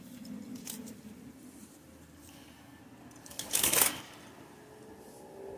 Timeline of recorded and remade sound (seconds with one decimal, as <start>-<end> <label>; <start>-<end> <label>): 0.0-2.2 recorded; 2.2-2.8 remade; 2.8-3.2 recorded; 3.2-4.0 remade; 4.0-5.6 recorded